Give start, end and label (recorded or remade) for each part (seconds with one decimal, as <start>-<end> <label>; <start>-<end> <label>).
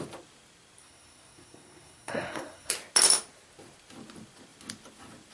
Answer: 0.0-0.8 recorded; 0.8-2.7 remade; 2.7-5.3 recorded